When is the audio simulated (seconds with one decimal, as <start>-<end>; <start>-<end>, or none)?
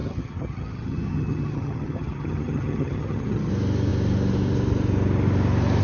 0.0-3.5